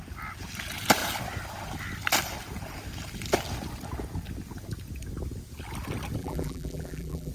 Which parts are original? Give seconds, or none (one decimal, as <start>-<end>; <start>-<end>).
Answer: 0.0-6.2